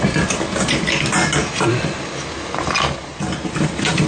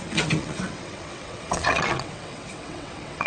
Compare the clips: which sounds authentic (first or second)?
first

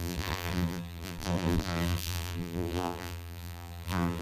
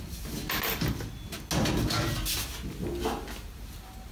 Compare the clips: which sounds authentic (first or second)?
second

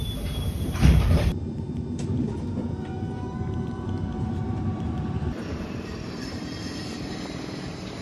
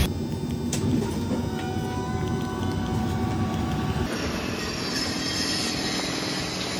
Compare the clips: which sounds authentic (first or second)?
second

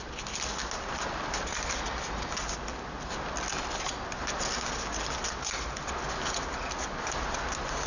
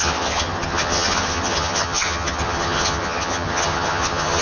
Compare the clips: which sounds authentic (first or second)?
first